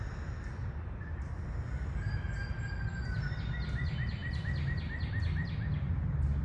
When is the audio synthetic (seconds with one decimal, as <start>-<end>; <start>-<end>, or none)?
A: none